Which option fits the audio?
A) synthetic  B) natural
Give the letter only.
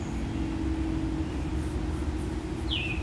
B